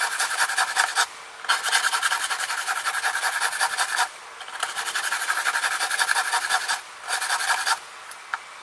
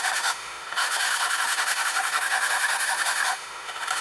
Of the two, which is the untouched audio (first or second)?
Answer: first